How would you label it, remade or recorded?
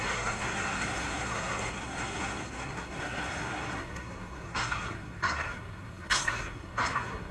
remade